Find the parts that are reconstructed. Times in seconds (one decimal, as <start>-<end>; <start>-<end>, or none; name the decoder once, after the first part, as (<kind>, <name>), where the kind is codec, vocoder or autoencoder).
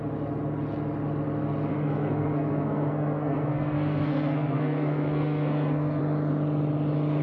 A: 1.7-6.0 (codec, SNAC)